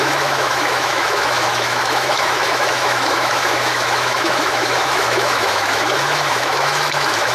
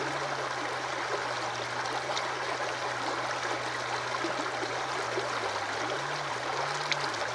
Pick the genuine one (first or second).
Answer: second